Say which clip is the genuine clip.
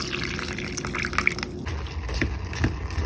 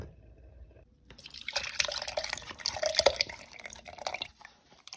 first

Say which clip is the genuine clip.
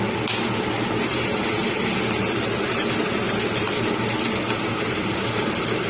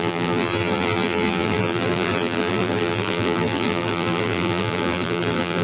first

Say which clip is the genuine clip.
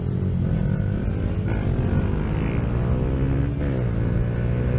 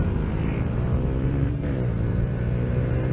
first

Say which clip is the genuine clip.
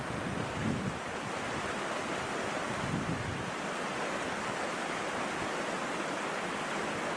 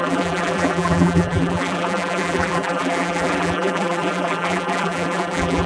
first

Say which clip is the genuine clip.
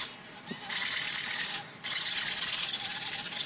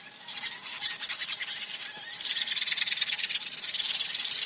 first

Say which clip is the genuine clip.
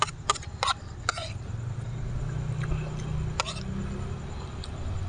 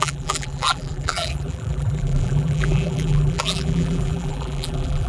first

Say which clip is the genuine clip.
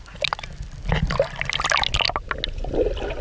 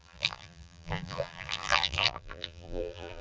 first